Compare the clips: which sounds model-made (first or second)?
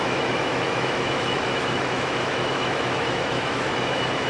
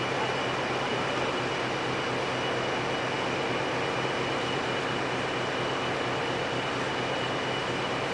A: first